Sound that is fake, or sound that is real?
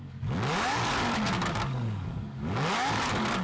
fake